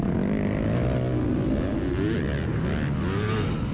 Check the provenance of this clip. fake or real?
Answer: real